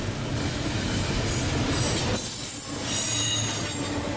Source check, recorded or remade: recorded